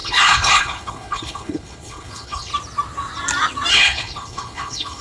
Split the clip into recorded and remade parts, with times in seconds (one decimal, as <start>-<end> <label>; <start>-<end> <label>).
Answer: 0.0-2.5 remade; 2.5-3.7 recorded; 3.7-5.0 remade